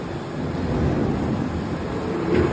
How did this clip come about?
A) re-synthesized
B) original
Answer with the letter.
B